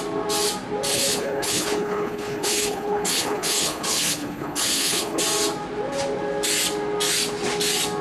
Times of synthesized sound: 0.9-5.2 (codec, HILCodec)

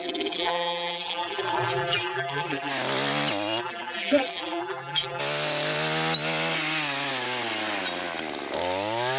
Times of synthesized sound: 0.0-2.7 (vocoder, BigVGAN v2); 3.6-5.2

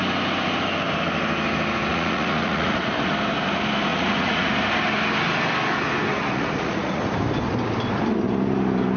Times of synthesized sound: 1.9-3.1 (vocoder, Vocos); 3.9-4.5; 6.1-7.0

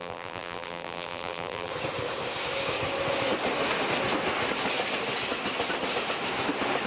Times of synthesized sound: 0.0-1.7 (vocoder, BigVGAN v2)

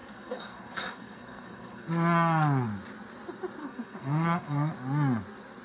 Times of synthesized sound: 0.0-1.9 (codec, SNAC); 3.6-4.7